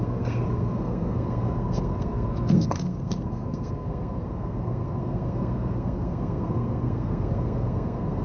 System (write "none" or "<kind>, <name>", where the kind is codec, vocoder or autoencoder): codec, SNAC